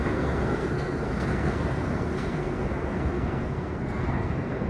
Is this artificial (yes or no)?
yes